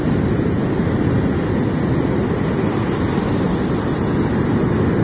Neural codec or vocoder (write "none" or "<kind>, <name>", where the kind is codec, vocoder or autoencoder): none